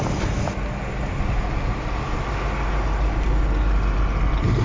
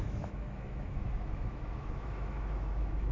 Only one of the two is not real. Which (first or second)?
second